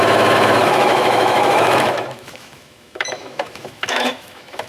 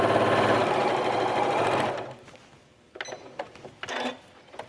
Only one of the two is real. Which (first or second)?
second